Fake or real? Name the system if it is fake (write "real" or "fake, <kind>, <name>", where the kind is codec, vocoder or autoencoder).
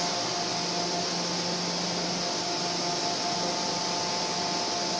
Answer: real